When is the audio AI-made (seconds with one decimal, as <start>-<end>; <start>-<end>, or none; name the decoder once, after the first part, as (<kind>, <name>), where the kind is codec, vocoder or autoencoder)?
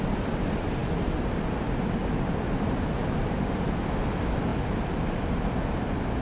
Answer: 2.0-3.8 (vocoder, BigVGAN v2); 4.5-5.2